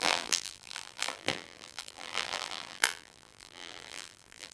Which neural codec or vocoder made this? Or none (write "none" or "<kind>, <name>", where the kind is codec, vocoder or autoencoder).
vocoder, BigVGAN v2